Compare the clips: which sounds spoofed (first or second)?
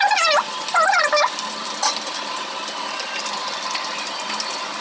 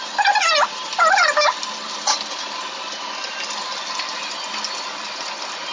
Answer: first